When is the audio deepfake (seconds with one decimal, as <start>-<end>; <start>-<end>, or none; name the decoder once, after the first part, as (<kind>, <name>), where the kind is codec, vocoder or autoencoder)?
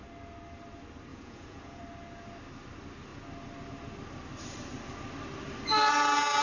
1.1-1.8 (vocoder, Vocos)